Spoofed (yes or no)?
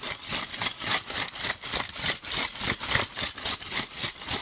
no